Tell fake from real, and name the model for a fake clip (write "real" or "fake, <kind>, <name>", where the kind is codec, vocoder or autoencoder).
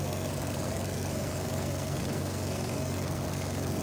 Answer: fake, codec, SNAC